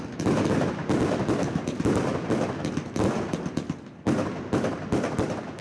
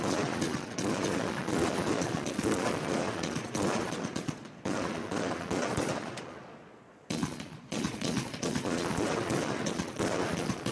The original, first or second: first